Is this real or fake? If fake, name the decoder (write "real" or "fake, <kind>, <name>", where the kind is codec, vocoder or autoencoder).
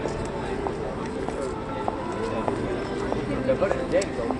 real